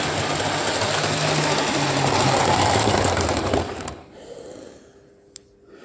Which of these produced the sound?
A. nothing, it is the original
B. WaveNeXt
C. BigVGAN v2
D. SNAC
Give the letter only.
A